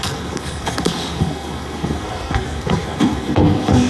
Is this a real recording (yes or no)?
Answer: no